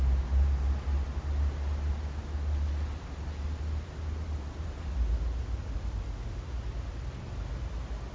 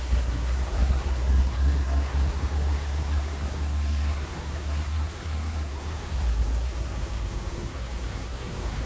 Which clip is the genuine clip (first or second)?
first